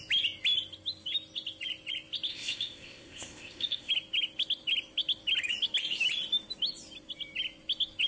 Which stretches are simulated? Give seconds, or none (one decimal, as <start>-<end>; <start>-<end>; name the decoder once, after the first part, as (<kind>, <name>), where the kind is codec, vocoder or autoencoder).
2.3-3.9 (codec, ZipCodec)